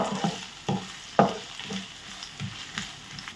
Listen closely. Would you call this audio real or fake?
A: real